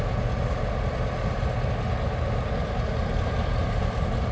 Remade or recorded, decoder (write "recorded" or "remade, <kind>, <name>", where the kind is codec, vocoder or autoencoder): recorded